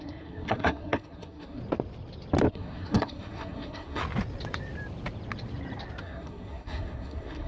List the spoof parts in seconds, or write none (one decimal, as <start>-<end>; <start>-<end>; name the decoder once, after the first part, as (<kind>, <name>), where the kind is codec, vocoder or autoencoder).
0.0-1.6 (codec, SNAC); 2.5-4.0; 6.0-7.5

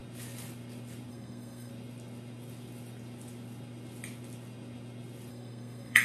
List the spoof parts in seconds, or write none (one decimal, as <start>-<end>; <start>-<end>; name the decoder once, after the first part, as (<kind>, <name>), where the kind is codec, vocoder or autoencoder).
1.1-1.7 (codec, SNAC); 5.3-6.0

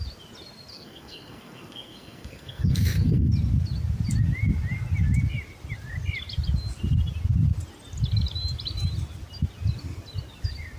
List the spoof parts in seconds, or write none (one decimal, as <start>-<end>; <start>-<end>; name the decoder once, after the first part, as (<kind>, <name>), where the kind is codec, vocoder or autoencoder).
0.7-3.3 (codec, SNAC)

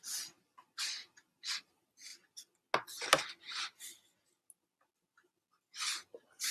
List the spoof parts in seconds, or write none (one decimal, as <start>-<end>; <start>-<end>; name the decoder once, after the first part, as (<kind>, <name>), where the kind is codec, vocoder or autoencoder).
none